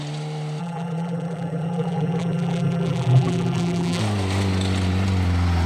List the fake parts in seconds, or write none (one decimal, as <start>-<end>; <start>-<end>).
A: 0.6-4.0